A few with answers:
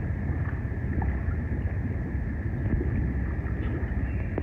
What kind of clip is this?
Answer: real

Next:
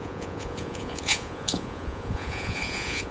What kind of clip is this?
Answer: fake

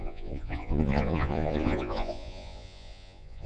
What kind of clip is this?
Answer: fake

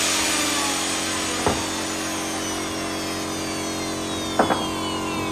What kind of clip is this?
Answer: real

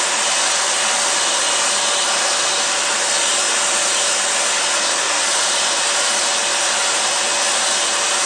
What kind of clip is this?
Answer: real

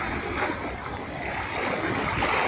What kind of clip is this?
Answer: real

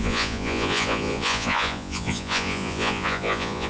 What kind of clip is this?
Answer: fake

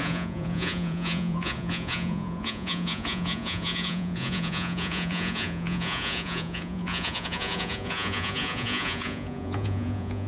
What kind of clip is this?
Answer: fake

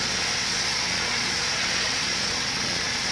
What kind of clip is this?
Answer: fake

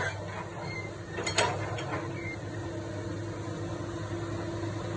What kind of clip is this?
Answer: real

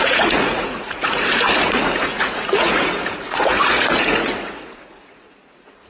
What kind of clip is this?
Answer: fake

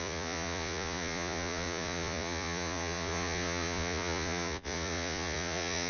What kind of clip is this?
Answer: fake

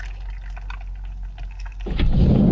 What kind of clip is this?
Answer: real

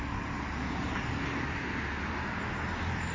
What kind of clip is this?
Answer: real